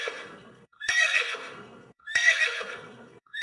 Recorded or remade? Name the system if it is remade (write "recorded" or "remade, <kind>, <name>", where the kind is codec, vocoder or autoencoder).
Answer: remade, codec, SNAC